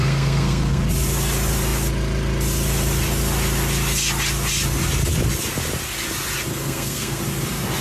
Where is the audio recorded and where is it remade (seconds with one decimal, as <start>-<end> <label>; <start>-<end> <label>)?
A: 0.0-0.9 remade; 0.9-6.5 recorded; 6.5-7.2 remade; 7.2-7.8 recorded